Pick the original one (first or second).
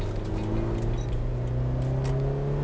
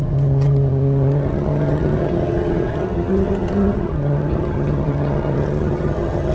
first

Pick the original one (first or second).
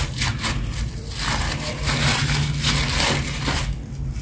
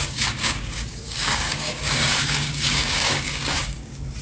first